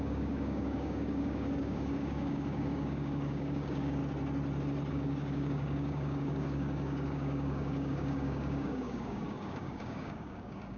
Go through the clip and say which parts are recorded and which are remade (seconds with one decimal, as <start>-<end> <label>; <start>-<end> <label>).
0.0-4.0 remade; 4.0-4.9 recorded; 4.9-10.8 remade